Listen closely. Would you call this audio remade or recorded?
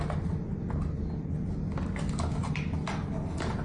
recorded